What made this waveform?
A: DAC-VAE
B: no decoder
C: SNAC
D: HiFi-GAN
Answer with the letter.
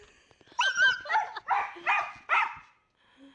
B